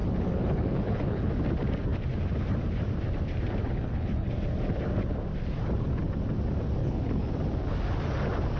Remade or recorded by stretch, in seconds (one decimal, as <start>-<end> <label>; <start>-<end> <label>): 0.0-1.3 remade; 1.3-3.6 recorded; 3.6-4.3 remade; 4.3-6.8 recorded; 6.8-7.3 remade; 7.3-8.6 recorded